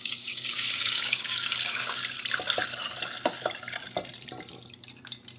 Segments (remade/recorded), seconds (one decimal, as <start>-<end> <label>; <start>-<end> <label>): 0.0-2.0 remade; 2.0-5.4 recorded